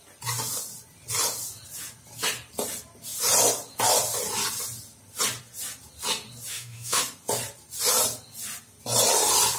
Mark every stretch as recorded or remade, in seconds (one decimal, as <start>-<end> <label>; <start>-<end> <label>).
0.0-6.5 recorded; 6.5-7.0 remade; 7.0-9.6 recorded